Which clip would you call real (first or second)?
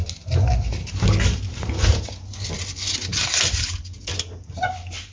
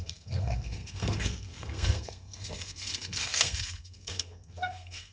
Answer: first